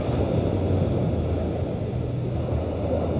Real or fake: real